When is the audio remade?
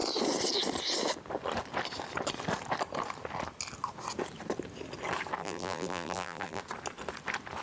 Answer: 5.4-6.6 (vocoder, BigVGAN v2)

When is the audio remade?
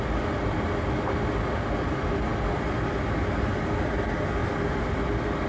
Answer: none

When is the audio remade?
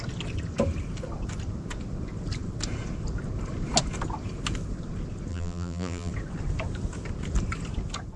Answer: 5.3-6.1 (vocoder, BigVGAN v2)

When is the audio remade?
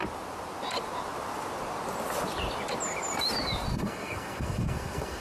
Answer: 3.7-5.2 (codec, SNAC)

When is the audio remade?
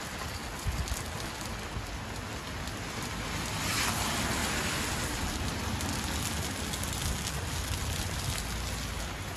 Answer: none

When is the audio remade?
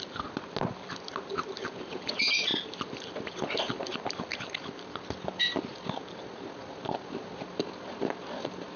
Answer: none